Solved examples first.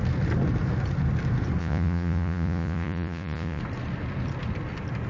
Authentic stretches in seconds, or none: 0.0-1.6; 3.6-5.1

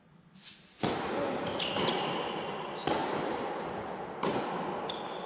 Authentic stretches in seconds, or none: 0.0-5.3

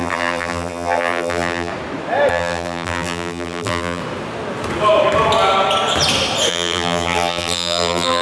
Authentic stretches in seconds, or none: 1.7-2.3; 4.0-6.5

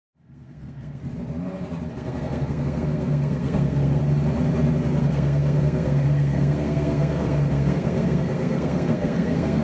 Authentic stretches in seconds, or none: 1.0-1.9; 4.0-5.0

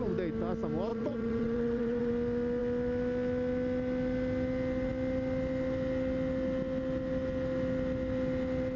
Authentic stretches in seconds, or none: 0.0-0.9; 2.1-8.8

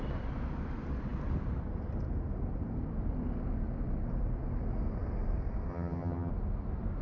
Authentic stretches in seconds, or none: 0.0-5.7; 6.3-7.0